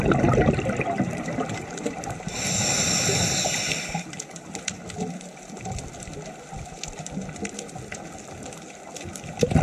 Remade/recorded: recorded